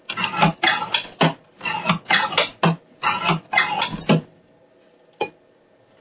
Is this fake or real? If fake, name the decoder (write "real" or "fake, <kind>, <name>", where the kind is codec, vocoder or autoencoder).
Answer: real